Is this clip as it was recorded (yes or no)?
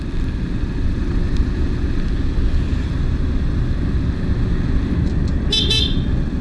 yes